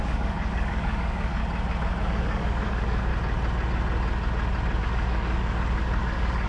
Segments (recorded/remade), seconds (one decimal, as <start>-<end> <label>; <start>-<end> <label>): 0.0-1.4 remade; 1.4-2.0 recorded; 2.0-3.1 remade; 3.1-4.8 recorded; 4.8-6.5 remade